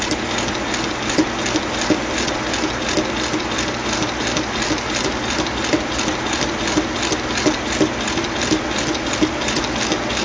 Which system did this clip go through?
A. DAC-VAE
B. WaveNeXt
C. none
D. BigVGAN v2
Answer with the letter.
C